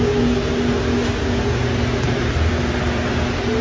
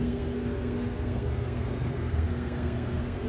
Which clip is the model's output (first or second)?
second